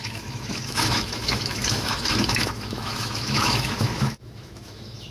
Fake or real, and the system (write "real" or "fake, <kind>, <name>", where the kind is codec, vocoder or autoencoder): fake, autoencoder, DAC-VAE